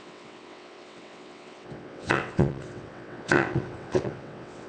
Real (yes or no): no